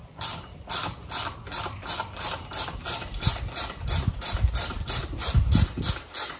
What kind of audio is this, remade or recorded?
recorded